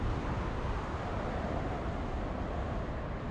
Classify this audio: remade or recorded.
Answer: recorded